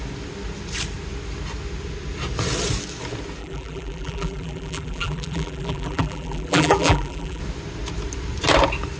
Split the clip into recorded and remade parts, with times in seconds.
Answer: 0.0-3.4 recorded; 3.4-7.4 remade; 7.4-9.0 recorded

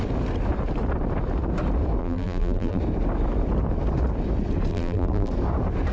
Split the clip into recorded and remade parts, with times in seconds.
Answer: 0.0-2.0 recorded; 2.0-2.8 remade; 2.8-4.7 recorded; 4.7-5.3 remade; 5.3-5.9 recorded

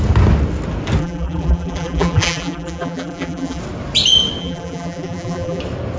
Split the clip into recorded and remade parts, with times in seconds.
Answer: 0.0-1.0 recorded; 1.0-3.6 remade; 3.6-4.4 recorded; 4.4-5.6 remade; 5.6-6.0 recorded

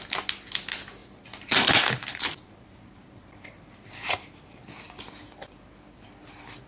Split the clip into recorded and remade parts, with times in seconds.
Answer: 0.0-1.0 recorded; 1.0-5.0 remade; 5.0-6.7 recorded